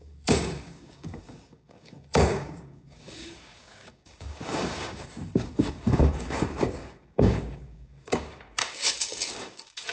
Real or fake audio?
fake